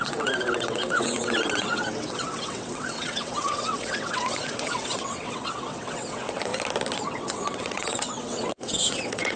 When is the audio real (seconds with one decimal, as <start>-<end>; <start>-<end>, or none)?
6.5-7.0